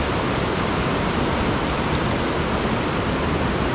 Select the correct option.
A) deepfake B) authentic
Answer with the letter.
B